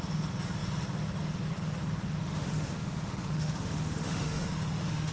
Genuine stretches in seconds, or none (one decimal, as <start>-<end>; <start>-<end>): 0.0-2.2